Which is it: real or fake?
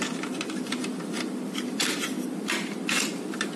real